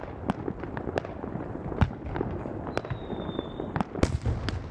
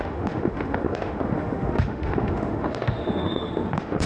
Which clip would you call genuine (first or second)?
first